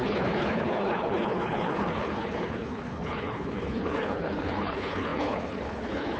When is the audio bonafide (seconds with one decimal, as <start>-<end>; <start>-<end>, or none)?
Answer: none